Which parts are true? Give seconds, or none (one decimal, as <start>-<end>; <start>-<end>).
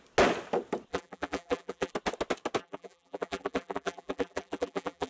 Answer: 0.0-0.9; 1.9-2.6